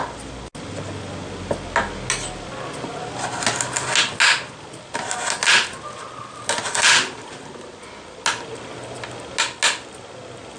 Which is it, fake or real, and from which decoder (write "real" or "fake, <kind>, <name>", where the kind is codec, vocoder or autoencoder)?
real